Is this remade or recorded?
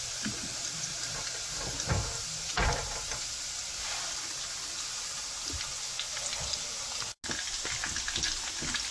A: recorded